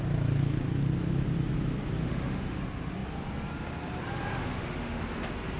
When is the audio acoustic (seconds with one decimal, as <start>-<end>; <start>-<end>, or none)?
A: 0.0-2.0; 2.6-4.3; 5.0-5.6